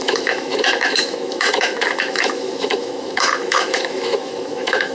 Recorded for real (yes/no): no